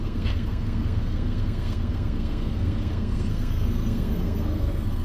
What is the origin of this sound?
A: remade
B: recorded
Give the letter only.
A